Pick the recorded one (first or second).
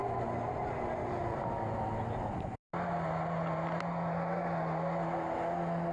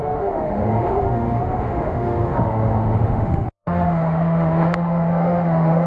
first